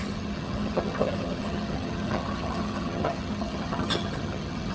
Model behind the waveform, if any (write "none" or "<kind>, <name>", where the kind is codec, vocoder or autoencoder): vocoder, HiFi-GAN